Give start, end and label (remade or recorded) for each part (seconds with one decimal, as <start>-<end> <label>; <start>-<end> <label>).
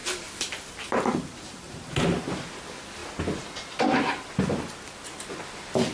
0.0-5.9 recorded